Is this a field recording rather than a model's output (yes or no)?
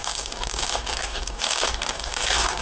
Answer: no